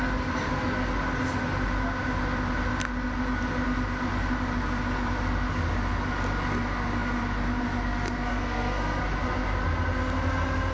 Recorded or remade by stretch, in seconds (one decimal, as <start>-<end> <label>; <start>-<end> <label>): 0.0-8.3 recorded; 8.3-9.0 remade; 9.0-10.7 recorded